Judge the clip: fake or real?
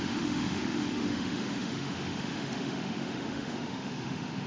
fake